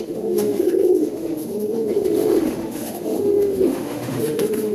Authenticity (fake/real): fake